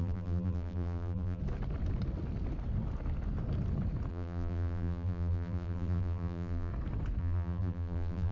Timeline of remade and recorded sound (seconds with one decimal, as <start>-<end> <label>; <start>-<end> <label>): 0.0-1.4 remade; 1.4-4.1 recorded; 4.1-6.7 remade; 6.7-7.2 recorded; 7.2-8.3 remade